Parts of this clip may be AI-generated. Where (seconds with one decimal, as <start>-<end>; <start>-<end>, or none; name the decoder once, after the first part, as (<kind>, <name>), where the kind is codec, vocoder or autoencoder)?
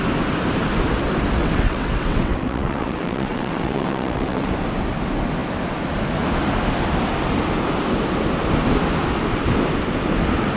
1.4-4.5 (vocoder, WaveNeXt)